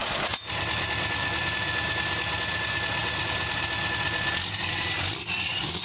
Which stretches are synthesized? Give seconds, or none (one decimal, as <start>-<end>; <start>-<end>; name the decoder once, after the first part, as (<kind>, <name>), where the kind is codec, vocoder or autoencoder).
none